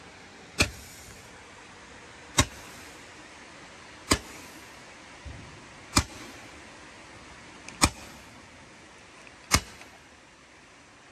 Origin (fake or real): real